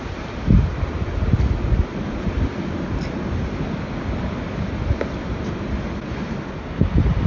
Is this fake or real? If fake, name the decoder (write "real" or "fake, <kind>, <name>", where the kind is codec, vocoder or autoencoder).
real